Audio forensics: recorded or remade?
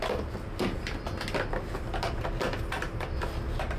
recorded